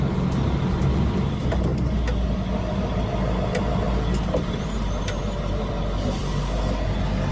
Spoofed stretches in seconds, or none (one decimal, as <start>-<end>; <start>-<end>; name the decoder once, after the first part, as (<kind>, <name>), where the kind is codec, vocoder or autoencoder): none